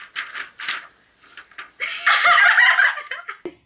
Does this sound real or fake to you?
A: real